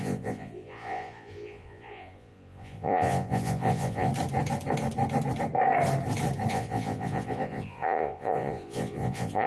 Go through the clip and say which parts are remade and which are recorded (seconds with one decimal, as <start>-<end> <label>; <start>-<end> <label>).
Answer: 0.0-4.1 remade; 4.1-6.5 recorded; 6.5-9.5 remade